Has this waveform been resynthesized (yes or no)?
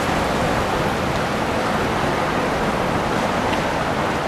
no